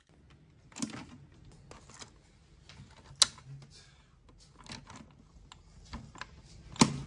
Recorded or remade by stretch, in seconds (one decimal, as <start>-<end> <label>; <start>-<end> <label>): 0.0-7.1 recorded